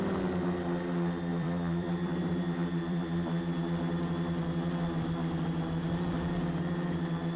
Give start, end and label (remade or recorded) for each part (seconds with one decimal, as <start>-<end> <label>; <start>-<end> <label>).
0.0-1.3 recorded; 1.3-3.4 remade; 3.4-7.4 recorded